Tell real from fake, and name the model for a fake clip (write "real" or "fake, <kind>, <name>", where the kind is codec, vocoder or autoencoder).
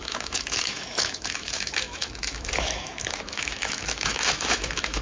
fake, autoencoder, DAC-VAE